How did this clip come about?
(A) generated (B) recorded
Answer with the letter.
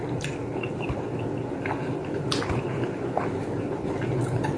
B